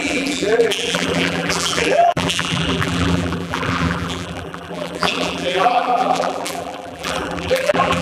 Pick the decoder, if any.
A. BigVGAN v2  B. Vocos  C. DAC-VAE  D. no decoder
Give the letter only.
A